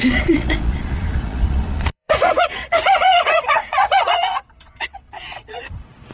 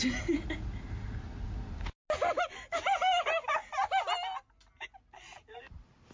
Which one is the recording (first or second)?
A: second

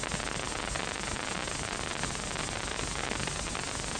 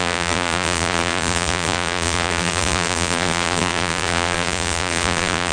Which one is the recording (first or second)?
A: first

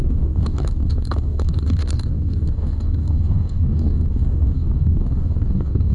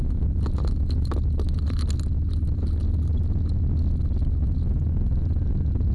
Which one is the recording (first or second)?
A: second